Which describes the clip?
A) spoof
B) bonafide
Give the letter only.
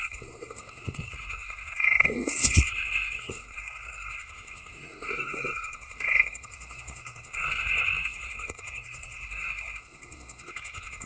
A